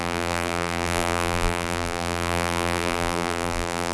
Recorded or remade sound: remade